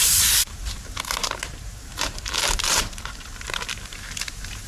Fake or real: fake